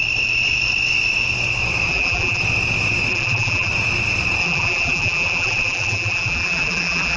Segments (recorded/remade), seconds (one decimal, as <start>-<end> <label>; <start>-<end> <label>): 0.0-1.9 recorded; 1.9-2.4 remade; 2.4-3.1 recorded; 3.1-3.7 remade; 3.7-4.4 recorded; 4.4-7.2 remade